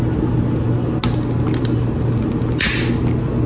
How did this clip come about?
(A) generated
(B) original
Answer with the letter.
B